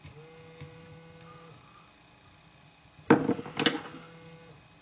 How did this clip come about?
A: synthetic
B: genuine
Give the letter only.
B